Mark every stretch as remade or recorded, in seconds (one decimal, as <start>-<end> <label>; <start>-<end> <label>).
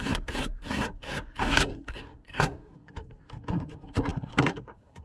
0.0-5.0 remade